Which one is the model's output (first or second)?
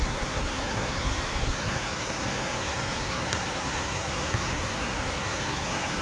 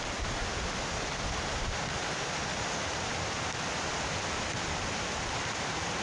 first